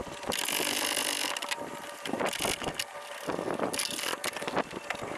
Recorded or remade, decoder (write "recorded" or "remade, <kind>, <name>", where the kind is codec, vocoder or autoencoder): recorded